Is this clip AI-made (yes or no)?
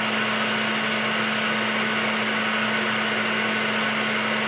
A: no